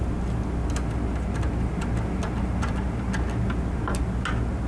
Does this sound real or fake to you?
real